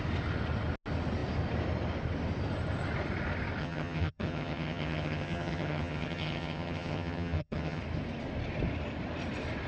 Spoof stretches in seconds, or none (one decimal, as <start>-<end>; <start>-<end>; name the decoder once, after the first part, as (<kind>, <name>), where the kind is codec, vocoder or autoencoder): 3.6-7.8 (vocoder, HiFi-GAN)